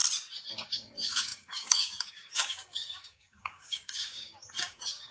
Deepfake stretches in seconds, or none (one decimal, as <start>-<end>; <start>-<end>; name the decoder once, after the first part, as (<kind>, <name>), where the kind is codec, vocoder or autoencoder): 0.5-5.1 (codec, DAC)